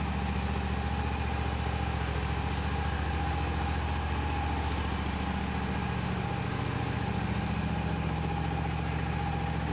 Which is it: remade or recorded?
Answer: recorded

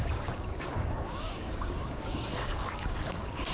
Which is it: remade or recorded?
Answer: remade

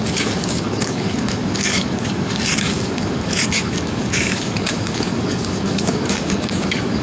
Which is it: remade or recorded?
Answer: remade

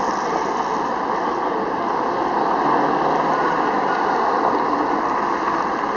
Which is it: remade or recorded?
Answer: recorded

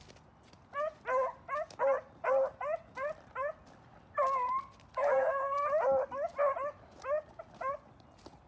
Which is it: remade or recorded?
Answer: recorded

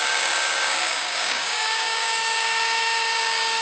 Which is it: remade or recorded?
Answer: remade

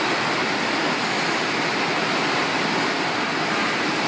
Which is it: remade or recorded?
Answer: recorded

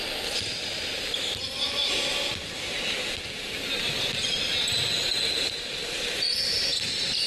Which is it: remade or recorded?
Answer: recorded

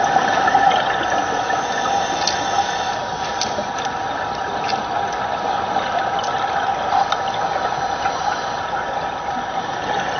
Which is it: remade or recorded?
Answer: recorded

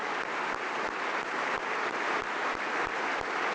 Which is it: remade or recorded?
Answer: recorded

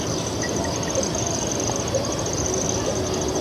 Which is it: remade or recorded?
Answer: recorded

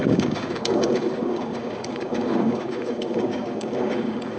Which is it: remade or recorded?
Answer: remade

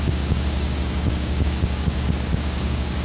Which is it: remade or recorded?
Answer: remade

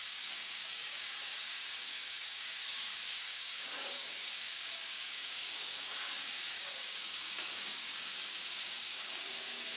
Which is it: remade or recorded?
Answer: remade